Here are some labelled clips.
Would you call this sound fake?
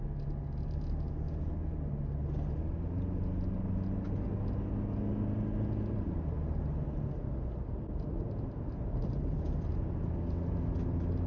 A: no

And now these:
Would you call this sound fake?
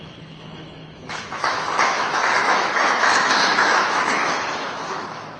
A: yes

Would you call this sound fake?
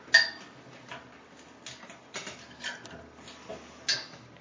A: no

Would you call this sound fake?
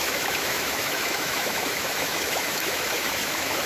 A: yes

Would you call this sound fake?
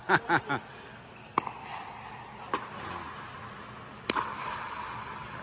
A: no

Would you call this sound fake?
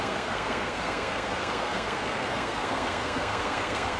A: yes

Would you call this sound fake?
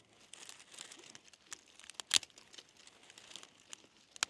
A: no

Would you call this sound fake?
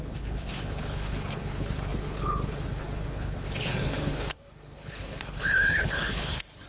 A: yes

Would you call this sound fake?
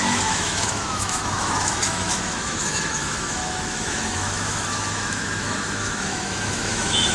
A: yes